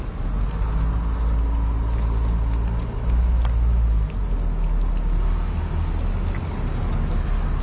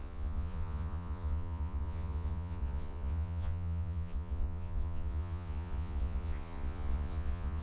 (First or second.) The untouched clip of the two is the first